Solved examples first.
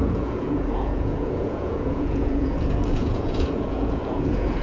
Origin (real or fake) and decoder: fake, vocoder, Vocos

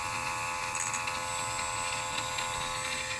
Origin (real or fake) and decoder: real